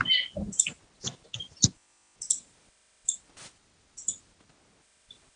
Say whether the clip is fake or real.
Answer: real